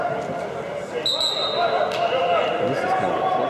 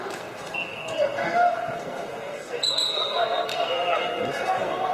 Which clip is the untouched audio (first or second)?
first